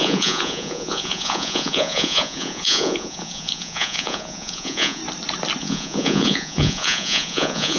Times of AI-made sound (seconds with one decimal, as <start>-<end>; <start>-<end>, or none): 0.0-5.0; 5.6-7.8